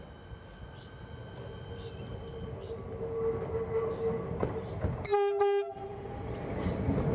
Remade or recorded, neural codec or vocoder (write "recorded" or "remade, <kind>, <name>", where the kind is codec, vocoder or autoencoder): recorded